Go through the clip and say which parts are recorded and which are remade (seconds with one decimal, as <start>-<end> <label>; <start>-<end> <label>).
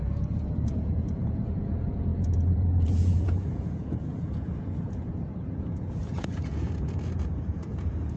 0.0-8.2 remade